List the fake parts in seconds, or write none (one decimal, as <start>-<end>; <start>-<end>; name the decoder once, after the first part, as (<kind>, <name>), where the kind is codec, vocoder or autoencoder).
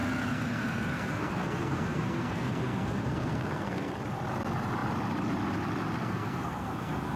0.0-3.9 (codec, SNAC); 6.0-7.2